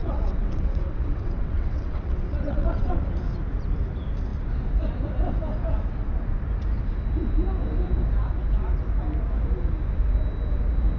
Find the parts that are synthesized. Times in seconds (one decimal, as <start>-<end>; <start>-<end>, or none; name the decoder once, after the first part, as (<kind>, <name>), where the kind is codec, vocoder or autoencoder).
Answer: 0.0-3.0 (vocoder, WaveNeXt)